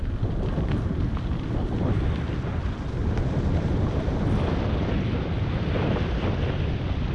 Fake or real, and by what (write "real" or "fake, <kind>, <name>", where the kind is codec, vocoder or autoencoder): real